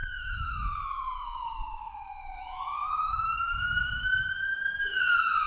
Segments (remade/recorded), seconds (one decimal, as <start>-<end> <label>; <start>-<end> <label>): 0.0-5.5 remade

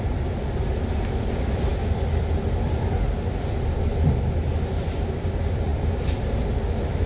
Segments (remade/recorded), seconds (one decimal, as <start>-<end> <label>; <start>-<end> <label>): 0.0-7.1 recorded

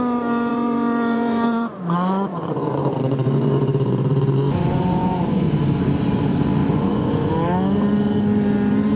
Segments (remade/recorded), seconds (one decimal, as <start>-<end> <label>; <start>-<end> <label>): 0.0-0.5 recorded; 0.5-5.5 remade; 5.5-6.6 recorded; 6.6-7.3 remade; 7.3-9.0 recorded

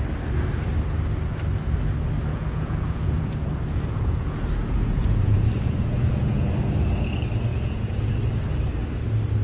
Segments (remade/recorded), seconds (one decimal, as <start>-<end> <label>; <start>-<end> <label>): 0.0-2.3 recorded; 2.3-6.6 remade; 6.6-7.5 recorded; 7.5-8.1 remade; 8.1-9.4 recorded

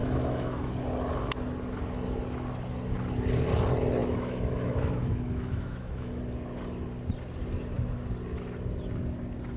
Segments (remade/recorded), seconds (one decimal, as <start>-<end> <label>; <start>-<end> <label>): 0.0-0.7 remade; 0.7-4.0 recorded; 4.0-6.2 remade; 6.2-9.6 recorded

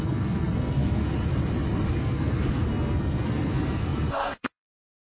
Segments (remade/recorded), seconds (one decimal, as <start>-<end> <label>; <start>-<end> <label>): 0.0-1.0 remade; 1.0-1.9 recorded; 1.9-5.1 remade

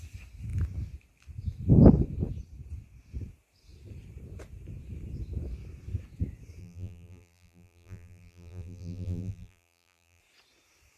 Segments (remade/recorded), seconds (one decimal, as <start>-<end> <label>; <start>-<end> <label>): 0.0-6.6 recorded; 6.6-10.2 remade; 10.2-11.0 recorded

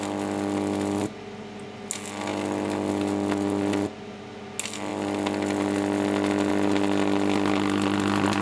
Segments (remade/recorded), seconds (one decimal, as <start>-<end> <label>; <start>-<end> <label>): 0.0-8.4 recorded